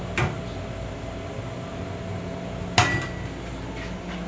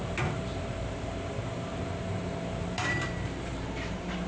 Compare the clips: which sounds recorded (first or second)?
first